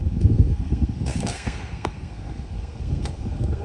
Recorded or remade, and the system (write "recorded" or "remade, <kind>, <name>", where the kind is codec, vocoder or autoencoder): remade, codec, SNAC